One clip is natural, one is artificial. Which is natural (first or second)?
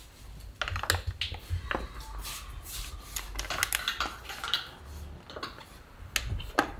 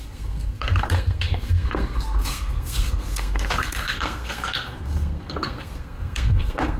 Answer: first